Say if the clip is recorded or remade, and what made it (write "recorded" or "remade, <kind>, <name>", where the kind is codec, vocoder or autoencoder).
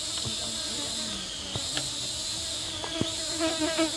recorded